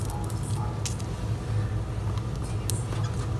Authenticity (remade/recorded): recorded